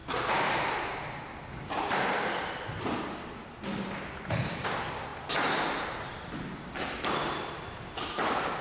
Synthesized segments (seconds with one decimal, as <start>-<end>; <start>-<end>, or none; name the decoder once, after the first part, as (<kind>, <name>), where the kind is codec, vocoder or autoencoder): 1.9-5.1 (vocoder, BigVGAN v2); 5.8-8.6